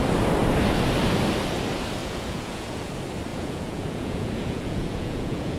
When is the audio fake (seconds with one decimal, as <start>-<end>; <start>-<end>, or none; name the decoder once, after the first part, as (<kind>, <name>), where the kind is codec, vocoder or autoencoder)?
2.0-2.9 (vocoder, Vocos); 3.3-5.6